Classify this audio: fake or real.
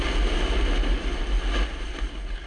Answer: real